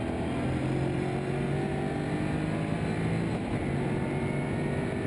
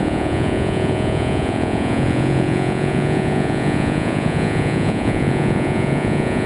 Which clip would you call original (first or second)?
first